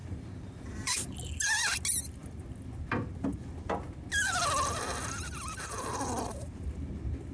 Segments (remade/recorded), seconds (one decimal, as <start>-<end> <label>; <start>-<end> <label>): 0.0-0.9 remade; 0.9-7.3 recorded